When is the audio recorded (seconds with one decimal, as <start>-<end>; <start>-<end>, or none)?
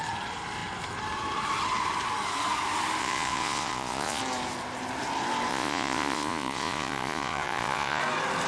0.0-3.0; 4.2-5.5; 8.0-8.5